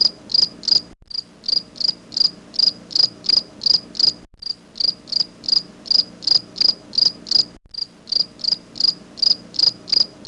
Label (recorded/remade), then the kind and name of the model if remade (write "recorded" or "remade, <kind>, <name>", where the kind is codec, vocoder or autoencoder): recorded